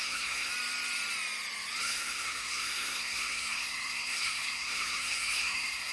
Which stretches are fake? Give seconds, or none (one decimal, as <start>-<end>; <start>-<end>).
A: 0.0-0.5; 1.8-5.9